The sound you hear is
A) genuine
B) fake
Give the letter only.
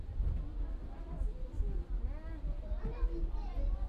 A